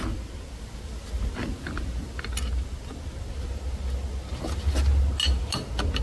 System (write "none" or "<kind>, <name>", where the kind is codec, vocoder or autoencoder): none